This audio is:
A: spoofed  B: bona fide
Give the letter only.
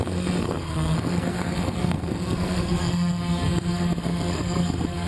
A